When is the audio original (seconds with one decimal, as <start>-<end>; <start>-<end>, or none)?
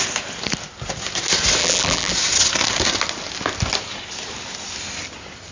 0.0-1.6; 2.1-5.5